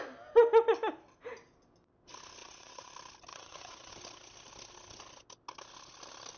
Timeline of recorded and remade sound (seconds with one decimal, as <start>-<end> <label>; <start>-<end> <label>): 0.0-2.4 recorded; 2.4-2.9 remade; 2.9-3.3 recorded; 3.3-3.9 remade; 3.9-6.4 recorded